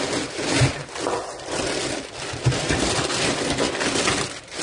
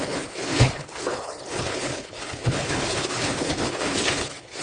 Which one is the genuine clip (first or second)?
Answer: first